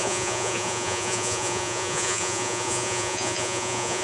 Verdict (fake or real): fake